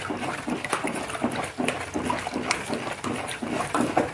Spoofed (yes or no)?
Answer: no